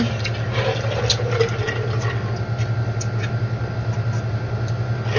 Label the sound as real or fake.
real